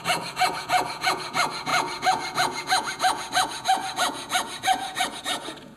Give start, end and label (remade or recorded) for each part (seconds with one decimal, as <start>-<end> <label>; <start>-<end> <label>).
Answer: 0.0-5.8 remade